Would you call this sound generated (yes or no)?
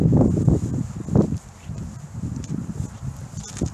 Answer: no